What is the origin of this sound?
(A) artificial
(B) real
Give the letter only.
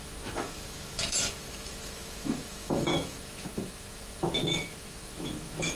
A